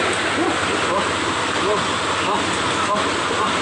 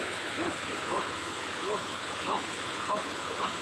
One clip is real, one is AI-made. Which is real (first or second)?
first